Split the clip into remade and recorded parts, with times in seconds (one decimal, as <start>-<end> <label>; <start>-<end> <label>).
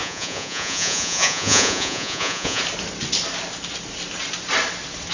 0.0-2.6 remade; 2.6-5.1 recorded